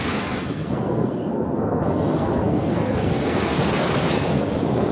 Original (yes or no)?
no